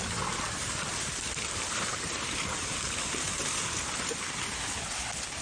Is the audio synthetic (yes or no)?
no